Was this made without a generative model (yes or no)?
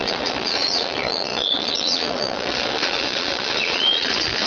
no